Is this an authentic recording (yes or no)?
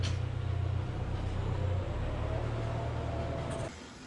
yes